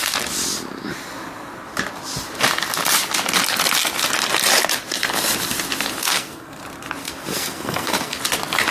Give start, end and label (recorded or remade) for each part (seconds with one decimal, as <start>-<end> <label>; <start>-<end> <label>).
0.0-6.0 recorded; 6.0-6.6 remade; 6.6-7.0 recorded; 7.0-8.2 remade; 8.2-8.7 recorded